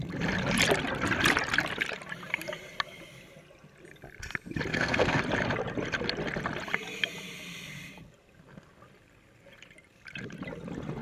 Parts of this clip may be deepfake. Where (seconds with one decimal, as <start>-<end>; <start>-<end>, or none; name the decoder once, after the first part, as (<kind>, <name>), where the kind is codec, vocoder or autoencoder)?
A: 4.7-5.2 (codec, SNAC)